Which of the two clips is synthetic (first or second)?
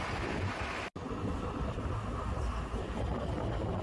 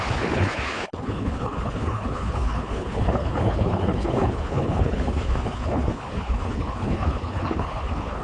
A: second